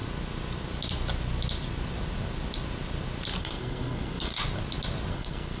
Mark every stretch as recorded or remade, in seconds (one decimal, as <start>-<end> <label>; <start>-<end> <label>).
0.0-3.4 recorded; 3.4-4.3 remade; 4.3-5.1 recorded; 5.1-5.6 remade